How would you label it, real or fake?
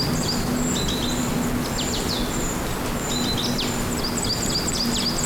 real